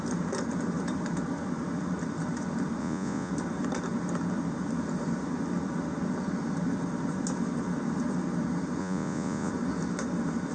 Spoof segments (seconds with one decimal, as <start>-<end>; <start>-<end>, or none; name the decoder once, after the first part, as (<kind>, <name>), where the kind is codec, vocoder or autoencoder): 2.8-3.3 (vocoder, Vocos); 8.8-9.5